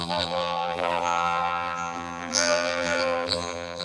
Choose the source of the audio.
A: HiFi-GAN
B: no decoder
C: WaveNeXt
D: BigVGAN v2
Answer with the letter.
D